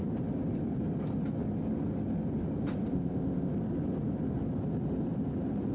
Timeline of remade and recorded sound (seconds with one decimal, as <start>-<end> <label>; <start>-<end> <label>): 0.0-2.9 recorded; 2.9-3.5 remade; 3.5-5.7 recorded